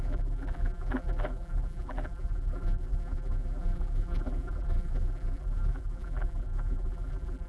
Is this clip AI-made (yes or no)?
yes